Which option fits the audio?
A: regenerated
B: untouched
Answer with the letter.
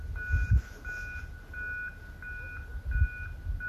B